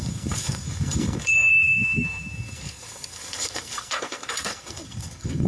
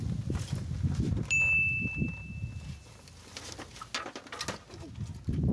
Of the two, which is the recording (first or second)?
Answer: second